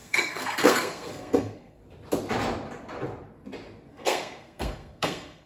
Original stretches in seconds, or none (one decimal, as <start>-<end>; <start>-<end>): 1.8-3.9